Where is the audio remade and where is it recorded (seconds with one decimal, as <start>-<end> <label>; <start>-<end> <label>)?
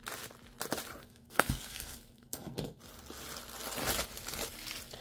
0.0-1.0 recorded; 1.0-2.8 remade; 2.8-5.0 recorded